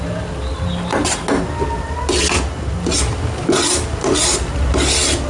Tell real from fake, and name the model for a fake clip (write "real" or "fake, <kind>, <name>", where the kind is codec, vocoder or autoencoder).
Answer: real